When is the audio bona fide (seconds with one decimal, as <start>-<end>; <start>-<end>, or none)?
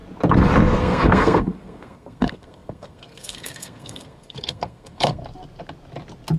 0.0-0.8; 5.2-6.4